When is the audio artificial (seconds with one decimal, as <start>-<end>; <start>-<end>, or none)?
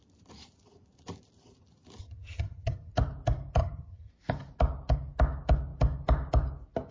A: 2.0-2.9; 3.6-4.1